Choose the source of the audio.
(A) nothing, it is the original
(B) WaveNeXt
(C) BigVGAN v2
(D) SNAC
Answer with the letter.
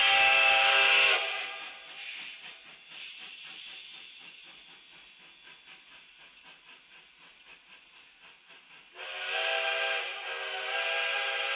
A